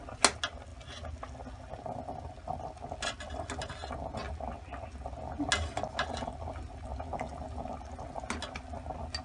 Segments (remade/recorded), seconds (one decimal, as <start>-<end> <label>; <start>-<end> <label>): 0.0-9.2 recorded